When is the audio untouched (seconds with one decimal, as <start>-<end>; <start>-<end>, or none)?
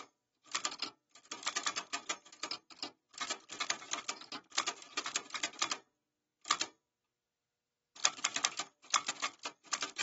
0.0-2.8; 3.3-6.3; 7.4-10.0